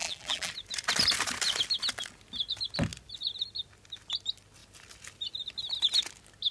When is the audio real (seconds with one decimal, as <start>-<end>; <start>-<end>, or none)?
0.5-6.5